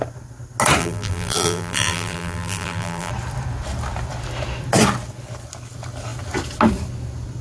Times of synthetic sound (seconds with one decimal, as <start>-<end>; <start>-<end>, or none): 0.8-3.1